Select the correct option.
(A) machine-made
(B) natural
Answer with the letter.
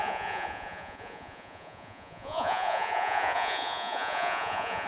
A